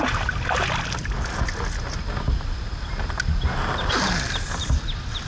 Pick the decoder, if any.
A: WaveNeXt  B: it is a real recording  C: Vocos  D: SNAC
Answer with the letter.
B